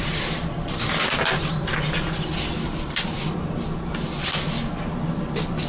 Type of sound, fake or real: real